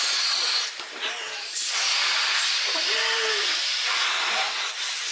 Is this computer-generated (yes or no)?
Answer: no